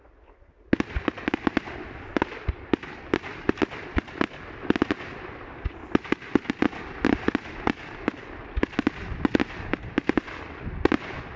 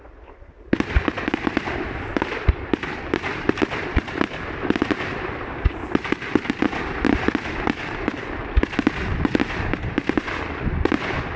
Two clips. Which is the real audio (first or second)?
first